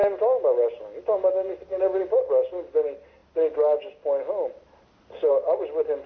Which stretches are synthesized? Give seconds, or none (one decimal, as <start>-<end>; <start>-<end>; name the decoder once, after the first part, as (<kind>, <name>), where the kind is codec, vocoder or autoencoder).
none